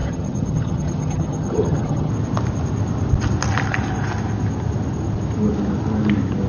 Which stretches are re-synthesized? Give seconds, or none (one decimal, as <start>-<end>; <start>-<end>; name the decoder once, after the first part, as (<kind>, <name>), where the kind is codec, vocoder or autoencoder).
0.0-2.1 (vocoder, HiFi-GAN)